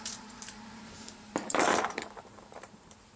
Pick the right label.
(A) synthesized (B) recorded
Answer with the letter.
A